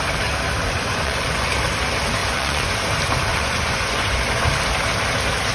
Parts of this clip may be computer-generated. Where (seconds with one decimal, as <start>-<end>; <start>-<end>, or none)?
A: 0.6-1.5; 2.2-2.8; 3.3-4.5